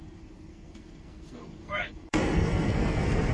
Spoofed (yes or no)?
yes